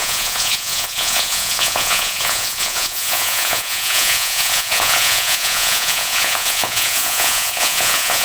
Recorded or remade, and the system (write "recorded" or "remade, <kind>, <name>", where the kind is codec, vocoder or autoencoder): remade, vocoder, Vocos